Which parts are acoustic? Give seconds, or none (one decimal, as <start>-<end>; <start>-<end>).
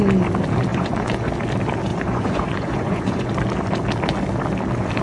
0.0-0.7; 1.3-1.9; 3.3-5.0